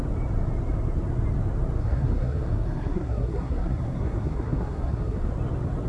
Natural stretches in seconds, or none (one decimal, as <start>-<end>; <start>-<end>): 0.0-1.8; 5.3-5.9